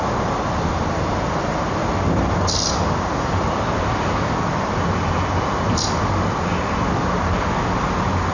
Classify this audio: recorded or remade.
recorded